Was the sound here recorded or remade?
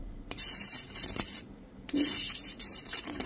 remade